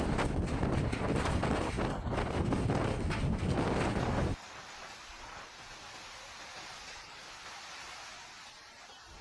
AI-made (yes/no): no